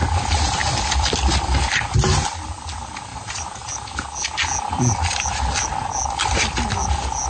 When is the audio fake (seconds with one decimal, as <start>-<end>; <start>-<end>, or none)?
3.1-3.7